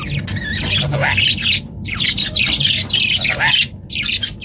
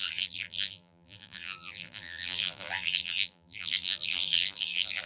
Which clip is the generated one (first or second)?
second